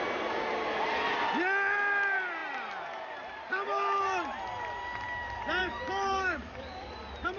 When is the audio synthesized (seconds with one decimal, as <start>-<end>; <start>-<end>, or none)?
5.6-6.9